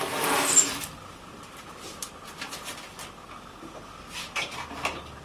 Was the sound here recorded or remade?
recorded